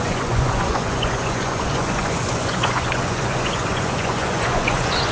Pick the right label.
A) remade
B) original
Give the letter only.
A